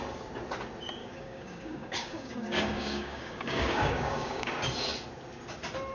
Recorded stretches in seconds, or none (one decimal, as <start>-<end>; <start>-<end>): 0.0-1.0; 4.5-5.9